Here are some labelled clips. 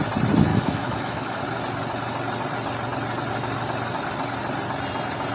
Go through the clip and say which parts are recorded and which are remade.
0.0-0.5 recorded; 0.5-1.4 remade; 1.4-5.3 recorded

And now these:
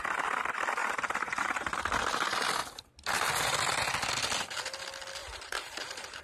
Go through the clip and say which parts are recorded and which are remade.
0.0-0.8 recorded; 0.8-1.8 remade; 1.8-5.2 recorded; 5.2-6.2 remade

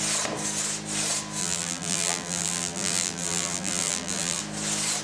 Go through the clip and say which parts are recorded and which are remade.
0.0-1.4 recorded; 1.4-4.4 remade; 4.4-5.0 recorded

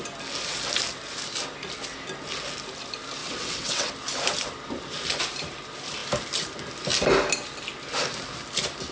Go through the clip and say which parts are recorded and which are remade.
0.0-3.2 recorded; 3.2-3.9 remade; 3.9-8.9 recorded